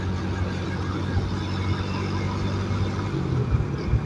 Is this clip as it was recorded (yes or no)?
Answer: yes